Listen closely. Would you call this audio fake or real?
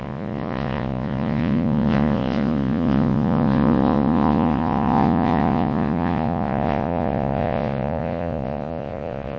fake